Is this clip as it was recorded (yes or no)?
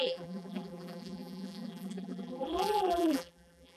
no